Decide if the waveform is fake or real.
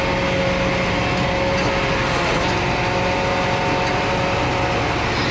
real